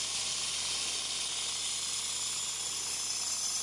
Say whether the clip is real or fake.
real